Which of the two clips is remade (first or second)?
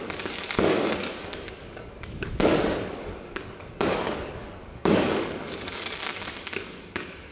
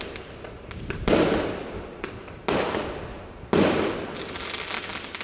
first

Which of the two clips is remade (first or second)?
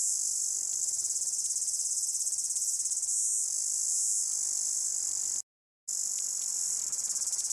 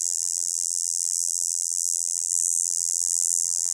second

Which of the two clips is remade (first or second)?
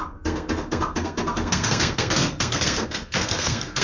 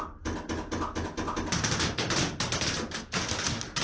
first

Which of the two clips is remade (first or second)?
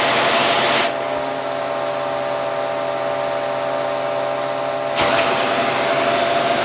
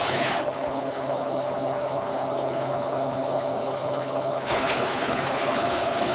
second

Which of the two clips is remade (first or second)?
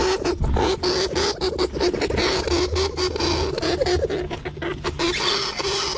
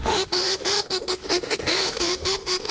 second